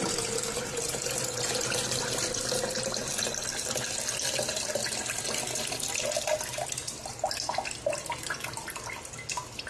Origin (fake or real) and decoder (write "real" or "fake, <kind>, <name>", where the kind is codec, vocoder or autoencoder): real